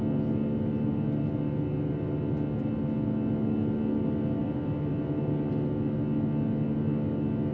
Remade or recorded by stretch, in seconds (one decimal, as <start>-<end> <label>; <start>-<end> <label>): 0.0-7.5 recorded

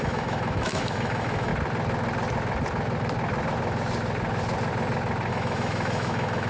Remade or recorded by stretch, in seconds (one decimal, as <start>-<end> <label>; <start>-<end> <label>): 0.0-1.5 remade; 1.5-5.3 recorded; 5.3-6.5 remade

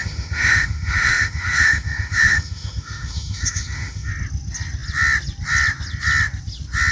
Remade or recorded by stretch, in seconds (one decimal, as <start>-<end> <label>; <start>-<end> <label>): 0.0-4.1 remade; 4.1-6.9 recorded

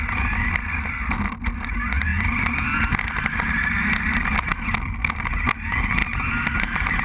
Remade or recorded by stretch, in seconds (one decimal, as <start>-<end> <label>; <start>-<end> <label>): 0.0-7.0 recorded

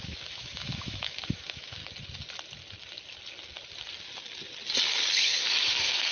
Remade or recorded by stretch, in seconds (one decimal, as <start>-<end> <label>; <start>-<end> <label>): 0.0-1.8 remade; 1.8-5.2 recorded; 5.2-6.1 remade

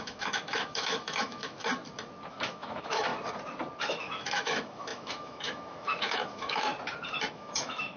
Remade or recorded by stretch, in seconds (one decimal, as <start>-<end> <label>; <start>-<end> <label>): 0.0-1.7 remade; 1.7-2.3 recorded; 2.3-3.1 remade; 3.1-3.8 recorded; 3.8-6.7 remade; 6.7-7.3 recorded; 7.3-8.0 remade

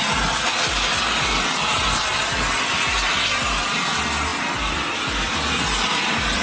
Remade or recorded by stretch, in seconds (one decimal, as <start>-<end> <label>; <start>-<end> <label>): 0.0-6.4 recorded

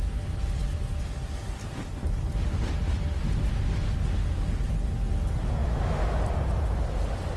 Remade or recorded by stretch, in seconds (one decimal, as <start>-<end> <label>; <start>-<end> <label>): 0.0-5.6 recorded; 5.6-6.2 remade; 6.2-7.4 recorded